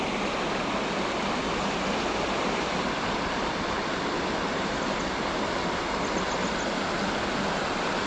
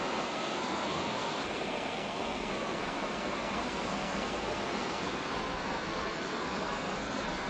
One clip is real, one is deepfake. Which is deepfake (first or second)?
second